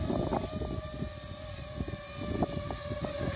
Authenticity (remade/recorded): recorded